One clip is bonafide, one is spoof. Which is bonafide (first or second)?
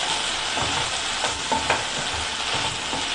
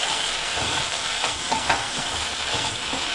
first